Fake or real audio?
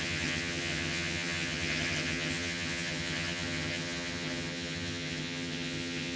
fake